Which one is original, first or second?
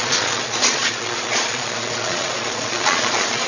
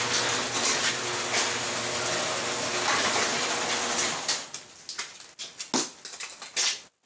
second